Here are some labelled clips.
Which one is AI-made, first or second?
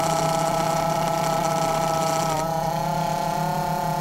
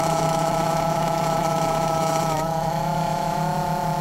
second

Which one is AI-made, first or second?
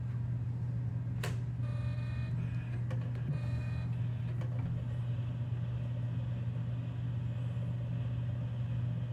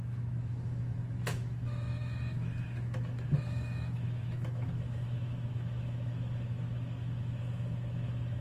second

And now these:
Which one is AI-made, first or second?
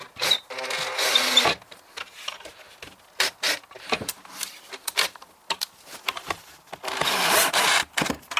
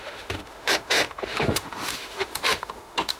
second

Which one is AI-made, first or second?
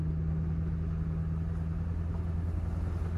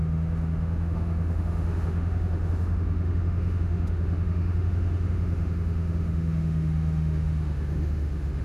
second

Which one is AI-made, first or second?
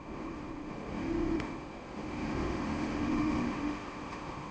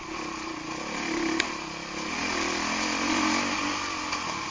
first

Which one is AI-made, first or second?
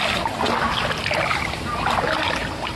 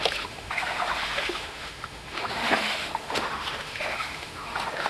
second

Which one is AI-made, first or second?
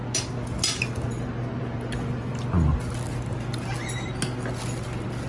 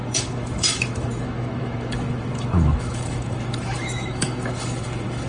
second